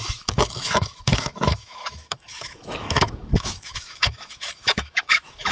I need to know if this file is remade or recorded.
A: remade